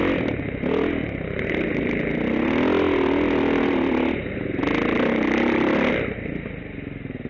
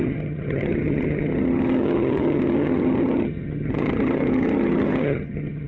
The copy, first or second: second